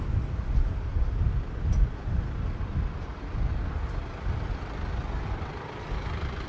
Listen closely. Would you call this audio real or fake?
real